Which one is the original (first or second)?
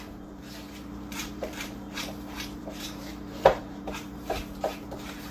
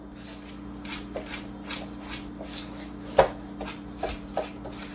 second